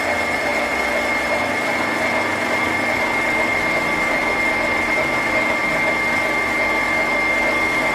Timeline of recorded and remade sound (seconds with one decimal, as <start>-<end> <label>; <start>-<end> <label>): 0.0-5.6 remade; 5.6-7.4 recorded; 7.4-7.9 remade